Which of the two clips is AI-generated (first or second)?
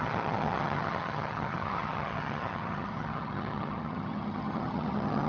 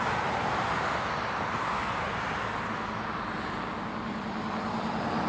first